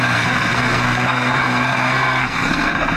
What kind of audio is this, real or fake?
fake